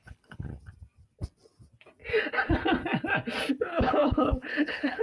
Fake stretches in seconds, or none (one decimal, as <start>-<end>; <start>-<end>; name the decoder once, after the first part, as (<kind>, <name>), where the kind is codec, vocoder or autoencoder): 0.0-0.5 (codec, HILCodec); 3.5-5.0